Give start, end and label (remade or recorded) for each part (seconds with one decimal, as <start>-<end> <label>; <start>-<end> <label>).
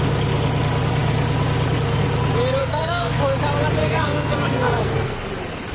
0.0-2.6 recorded; 2.6-3.2 remade; 3.2-3.8 recorded; 3.8-5.2 remade; 5.2-5.7 recorded